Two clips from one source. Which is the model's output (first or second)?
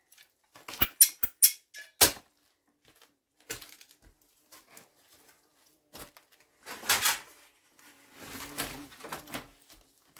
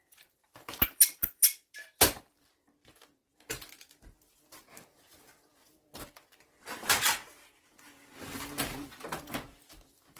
second